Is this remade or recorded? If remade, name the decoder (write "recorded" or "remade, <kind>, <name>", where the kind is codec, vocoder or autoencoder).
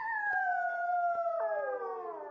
recorded